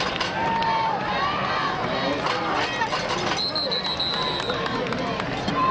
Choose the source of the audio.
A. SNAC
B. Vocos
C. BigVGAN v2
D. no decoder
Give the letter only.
D